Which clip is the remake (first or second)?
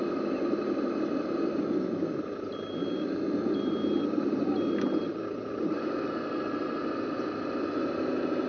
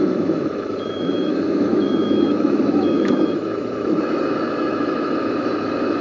second